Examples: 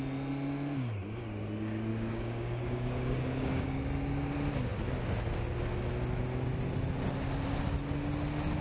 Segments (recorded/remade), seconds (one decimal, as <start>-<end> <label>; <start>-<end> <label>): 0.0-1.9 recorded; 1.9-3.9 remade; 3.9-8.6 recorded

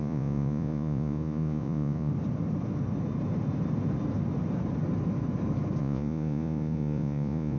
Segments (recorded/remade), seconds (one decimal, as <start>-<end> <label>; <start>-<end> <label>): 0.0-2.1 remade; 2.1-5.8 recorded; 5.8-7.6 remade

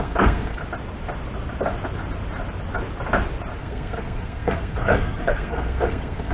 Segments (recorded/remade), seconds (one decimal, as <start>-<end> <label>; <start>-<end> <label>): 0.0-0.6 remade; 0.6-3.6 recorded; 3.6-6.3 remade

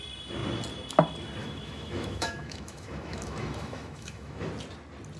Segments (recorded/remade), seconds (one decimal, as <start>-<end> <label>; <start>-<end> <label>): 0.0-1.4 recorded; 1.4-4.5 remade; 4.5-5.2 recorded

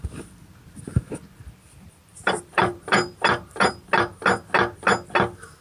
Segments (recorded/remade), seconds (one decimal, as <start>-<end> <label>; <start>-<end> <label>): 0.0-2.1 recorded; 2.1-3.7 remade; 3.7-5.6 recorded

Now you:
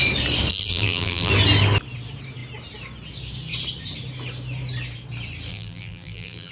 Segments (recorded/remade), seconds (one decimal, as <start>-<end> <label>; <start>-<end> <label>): 0.0-0.5 recorded; 0.5-1.3 remade; 1.3-5.5 recorded; 5.5-6.5 remade

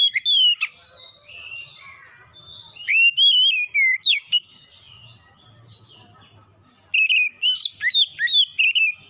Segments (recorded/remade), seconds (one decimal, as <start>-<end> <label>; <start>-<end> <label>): 0.0-4.1 recorded; 4.1-4.7 remade; 4.7-9.1 recorded

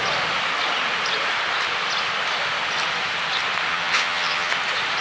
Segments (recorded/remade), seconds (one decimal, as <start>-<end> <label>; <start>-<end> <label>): 0.0-3.7 recorded; 3.7-4.5 remade; 4.5-5.0 recorded